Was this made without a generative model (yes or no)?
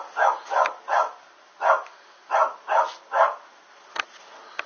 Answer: yes